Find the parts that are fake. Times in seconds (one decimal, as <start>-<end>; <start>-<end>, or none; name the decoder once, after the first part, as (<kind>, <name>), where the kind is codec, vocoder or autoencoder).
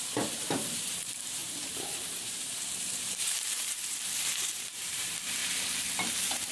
0.0-5.4 (vocoder, BigVGAN v2); 6.1-6.5